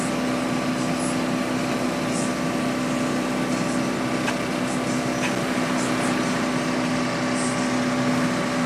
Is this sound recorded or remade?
recorded